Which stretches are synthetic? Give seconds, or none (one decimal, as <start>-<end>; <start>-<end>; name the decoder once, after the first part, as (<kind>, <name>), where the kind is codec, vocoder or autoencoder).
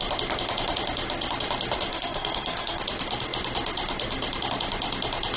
1.9-2.8 (codec, SNAC)